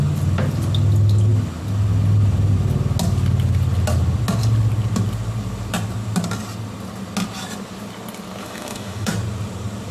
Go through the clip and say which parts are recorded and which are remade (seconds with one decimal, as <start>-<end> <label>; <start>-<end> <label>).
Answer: 0.0-8.4 recorded; 8.4-9.1 remade; 9.1-9.9 recorded